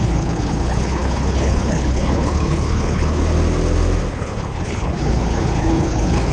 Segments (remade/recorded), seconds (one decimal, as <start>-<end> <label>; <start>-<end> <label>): 0.0-3.2 remade; 3.2-4.1 recorded; 4.1-6.3 remade